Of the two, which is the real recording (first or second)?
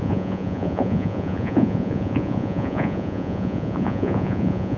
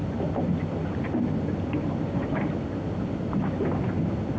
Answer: second